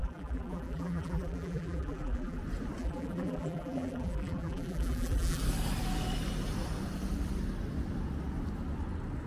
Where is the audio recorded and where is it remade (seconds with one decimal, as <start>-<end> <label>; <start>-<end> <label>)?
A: 0.0-2.4 remade; 2.4-2.8 recorded; 2.8-5.4 remade; 5.4-9.3 recorded